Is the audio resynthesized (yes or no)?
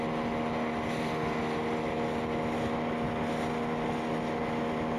no